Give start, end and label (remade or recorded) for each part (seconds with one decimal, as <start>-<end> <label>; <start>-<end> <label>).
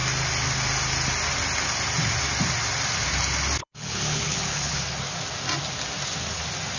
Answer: 0.0-3.6 recorded; 3.6-4.8 remade; 4.8-6.8 recorded